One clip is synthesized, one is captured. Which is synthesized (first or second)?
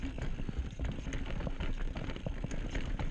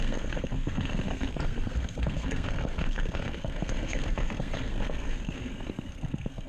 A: second